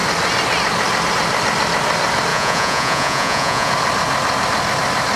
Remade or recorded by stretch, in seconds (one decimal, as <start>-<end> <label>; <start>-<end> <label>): 0.0-2.3 recorded; 2.3-3.7 remade; 3.7-5.2 recorded

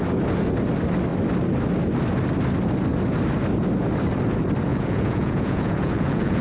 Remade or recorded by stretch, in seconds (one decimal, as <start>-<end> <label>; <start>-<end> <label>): 0.0-4.7 recorded; 4.7-6.4 remade

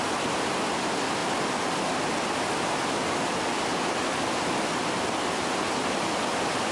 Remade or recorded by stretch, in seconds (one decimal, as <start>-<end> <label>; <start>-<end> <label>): 0.0-6.7 recorded

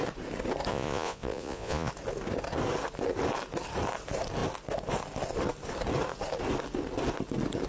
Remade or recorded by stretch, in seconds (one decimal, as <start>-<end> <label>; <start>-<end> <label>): 0.0-0.7 recorded; 0.7-1.9 remade; 1.9-7.7 recorded

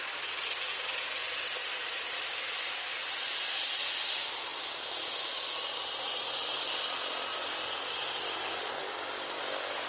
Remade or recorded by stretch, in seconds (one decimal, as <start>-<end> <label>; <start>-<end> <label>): 0.0-9.9 recorded

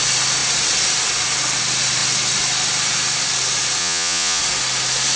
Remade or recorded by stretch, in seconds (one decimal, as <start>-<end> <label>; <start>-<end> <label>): 0.0-3.8 recorded; 3.8-4.4 remade; 4.4-5.2 recorded